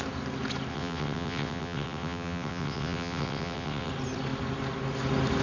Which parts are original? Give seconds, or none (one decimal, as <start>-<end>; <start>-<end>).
0.0-0.7; 3.9-5.4